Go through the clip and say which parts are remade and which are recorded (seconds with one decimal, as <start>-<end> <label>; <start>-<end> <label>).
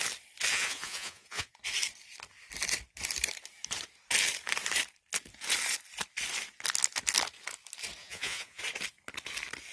0.0-0.5 recorded; 0.5-1.5 remade; 1.5-8.0 recorded; 8.0-8.6 remade; 8.6-9.7 recorded